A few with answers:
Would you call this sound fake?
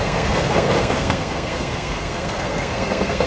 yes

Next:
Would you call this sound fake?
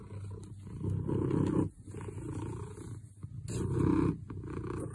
no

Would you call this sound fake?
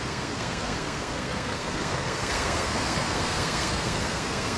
yes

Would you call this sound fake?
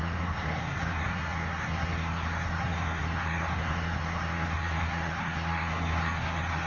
yes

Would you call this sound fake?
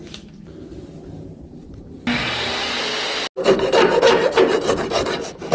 no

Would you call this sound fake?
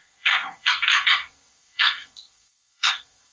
yes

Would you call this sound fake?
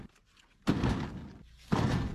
no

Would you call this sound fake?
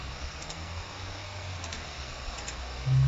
yes